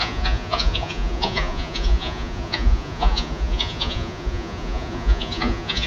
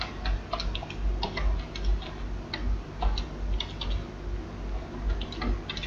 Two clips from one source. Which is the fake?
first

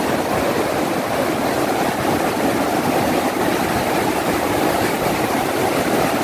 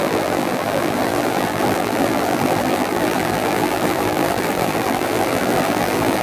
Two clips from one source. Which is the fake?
second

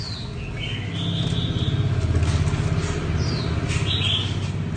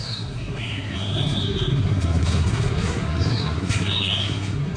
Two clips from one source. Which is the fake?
second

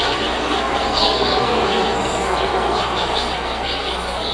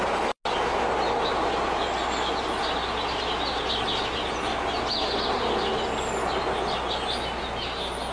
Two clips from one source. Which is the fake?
first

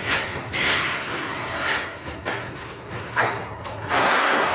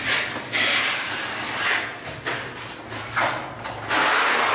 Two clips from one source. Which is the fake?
first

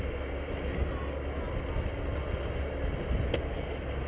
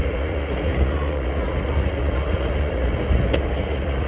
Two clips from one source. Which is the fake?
second